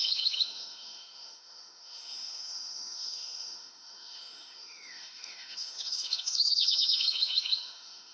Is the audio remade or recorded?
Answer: remade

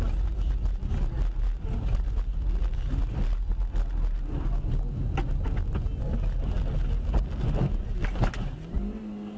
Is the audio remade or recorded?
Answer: recorded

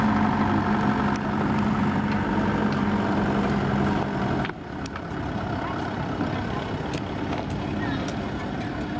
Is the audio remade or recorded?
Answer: recorded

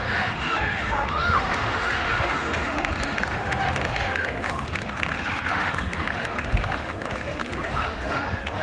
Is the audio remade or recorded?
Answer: remade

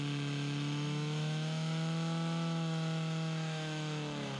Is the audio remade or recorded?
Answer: remade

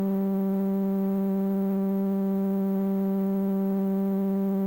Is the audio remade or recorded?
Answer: remade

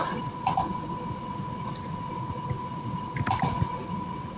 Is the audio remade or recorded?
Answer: recorded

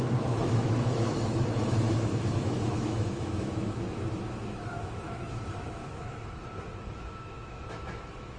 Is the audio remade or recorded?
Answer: remade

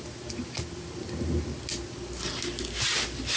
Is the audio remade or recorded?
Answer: recorded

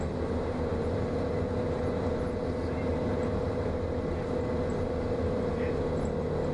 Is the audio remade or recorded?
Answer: recorded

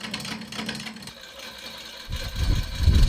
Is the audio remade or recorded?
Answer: recorded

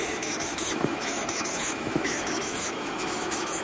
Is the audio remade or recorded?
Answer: remade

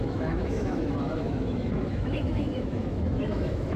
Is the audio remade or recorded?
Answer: remade